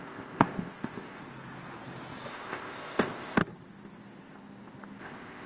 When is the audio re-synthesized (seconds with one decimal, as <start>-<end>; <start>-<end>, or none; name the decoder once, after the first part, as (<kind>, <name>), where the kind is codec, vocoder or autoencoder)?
0.0-1.2 (codec, ZipCodec); 2.3-3.4; 5.0-5.5